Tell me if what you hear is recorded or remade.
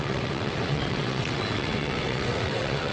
remade